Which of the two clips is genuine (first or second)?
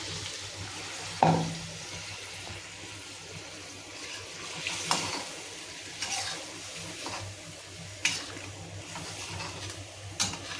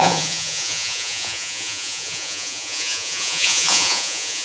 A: first